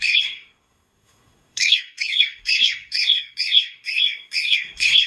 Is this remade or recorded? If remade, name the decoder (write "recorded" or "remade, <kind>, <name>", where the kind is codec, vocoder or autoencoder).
remade, codec, SNAC